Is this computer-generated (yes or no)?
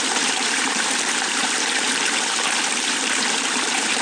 yes